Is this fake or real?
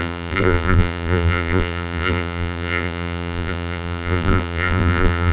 fake